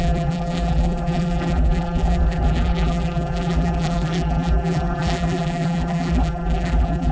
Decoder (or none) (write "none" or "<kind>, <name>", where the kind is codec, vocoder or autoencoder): vocoder, BigVGAN v2